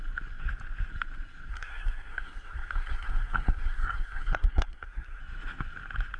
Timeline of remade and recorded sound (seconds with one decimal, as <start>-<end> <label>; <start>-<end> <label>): 0.0-1.5 recorded; 1.5-5.2 remade; 5.2-6.2 recorded